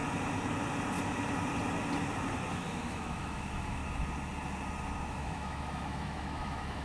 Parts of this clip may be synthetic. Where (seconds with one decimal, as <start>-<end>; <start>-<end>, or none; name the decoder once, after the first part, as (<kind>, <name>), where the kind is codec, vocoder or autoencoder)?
2.5-3.8 (autoencoder, DAC-VAE); 5.1-6.8